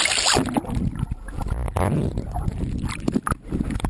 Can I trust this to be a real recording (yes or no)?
yes